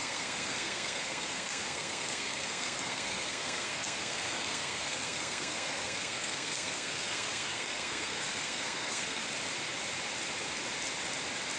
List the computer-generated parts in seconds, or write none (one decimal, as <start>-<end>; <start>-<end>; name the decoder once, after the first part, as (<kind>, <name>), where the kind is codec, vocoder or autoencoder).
0.0-9.2 (codec, SNAC)